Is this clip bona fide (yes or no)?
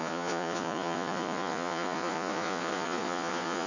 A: no